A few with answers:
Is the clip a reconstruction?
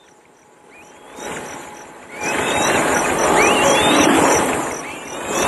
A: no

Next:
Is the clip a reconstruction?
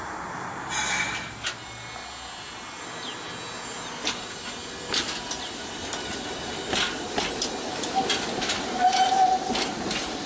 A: no